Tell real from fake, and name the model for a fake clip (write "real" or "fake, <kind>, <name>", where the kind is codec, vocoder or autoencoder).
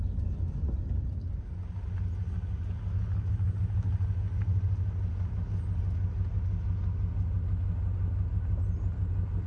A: real